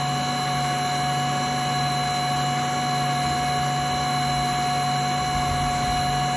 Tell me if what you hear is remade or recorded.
recorded